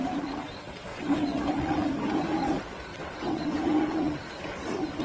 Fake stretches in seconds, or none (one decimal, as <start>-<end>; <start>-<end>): 0.9-1.9; 2.9-4.2